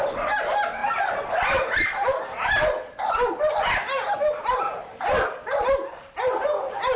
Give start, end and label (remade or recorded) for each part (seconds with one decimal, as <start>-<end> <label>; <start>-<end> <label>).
0.0-7.0 recorded